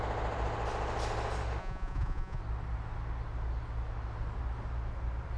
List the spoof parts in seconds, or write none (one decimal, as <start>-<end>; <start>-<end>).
1.6-2.4